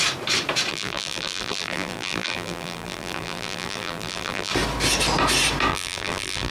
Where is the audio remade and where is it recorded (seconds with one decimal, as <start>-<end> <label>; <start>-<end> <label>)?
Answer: 0.0-0.7 recorded; 0.7-4.5 remade; 4.5-5.7 recorded; 5.7-6.5 remade